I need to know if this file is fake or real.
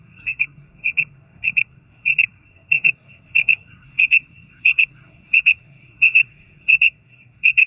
fake